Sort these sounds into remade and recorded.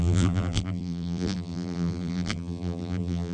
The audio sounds remade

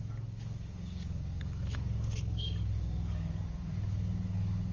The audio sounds remade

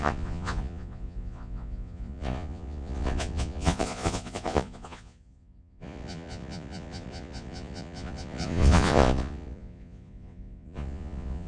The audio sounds remade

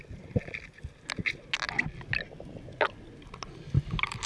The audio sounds recorded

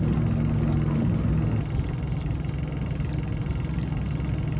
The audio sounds recorded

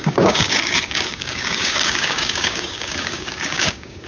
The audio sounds remade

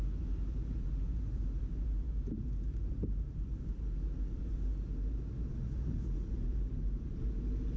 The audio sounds recorded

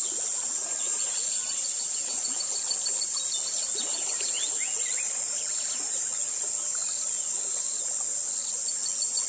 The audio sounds recorded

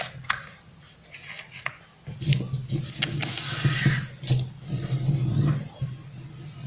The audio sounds recorded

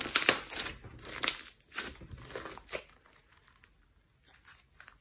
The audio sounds recorded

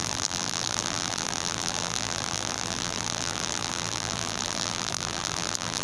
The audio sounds remade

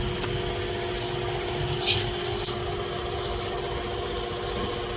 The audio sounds recorded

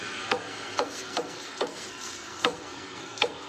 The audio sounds remade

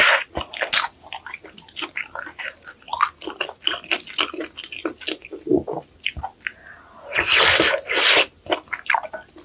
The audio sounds recorded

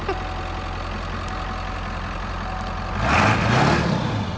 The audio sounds recorded